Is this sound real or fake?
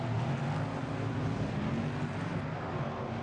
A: real